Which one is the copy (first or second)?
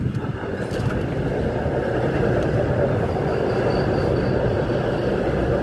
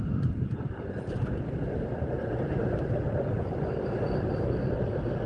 second